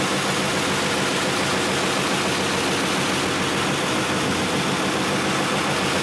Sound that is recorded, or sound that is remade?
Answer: recorded